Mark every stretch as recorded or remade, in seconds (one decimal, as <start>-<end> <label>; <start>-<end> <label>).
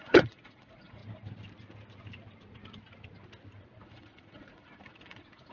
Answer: 0.0-1.0 remade; 1.0-3.8 recorded; 3.8-5.5 remade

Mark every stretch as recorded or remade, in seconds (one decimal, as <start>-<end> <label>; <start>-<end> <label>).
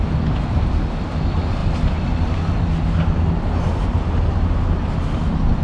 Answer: 0.0-5.6 recorded